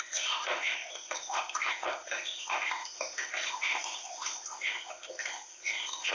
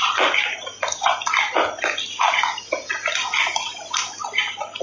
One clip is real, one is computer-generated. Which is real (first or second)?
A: second